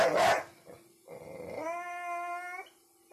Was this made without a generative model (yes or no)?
yes